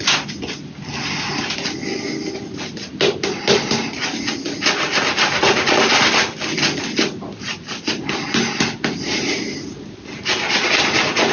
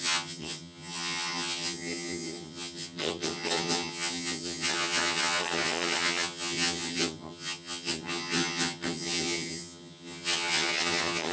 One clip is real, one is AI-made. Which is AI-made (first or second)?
second